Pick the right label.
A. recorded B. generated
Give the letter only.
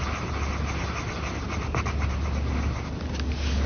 A